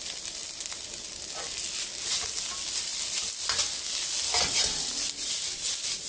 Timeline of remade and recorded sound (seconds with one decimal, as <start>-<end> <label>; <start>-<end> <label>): 0.0-6.1 recorded